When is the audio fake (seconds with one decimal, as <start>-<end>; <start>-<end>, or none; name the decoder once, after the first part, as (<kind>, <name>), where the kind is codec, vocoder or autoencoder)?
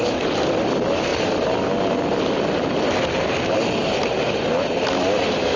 none